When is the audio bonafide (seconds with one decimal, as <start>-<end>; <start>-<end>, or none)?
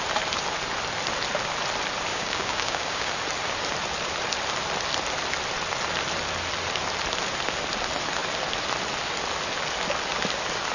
0.0-2.1; 3.1-10.7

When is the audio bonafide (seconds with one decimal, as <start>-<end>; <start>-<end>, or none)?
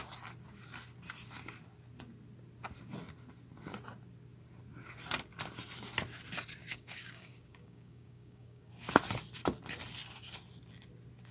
0.0-6.6; 8.7-11.3